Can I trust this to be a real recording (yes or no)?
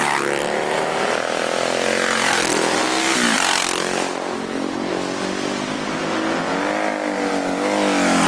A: yes